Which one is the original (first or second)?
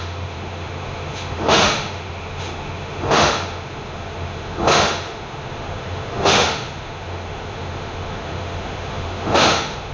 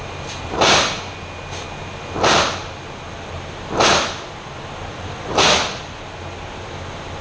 second